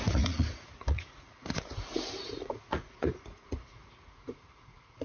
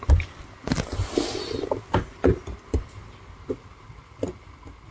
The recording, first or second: second